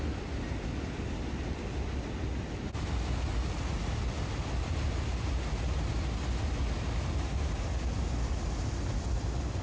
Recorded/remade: recorded